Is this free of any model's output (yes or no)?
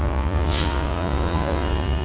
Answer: no